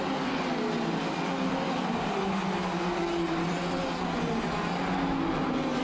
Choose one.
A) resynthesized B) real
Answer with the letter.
B